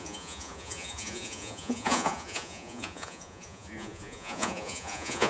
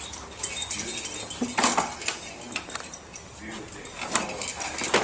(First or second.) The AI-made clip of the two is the first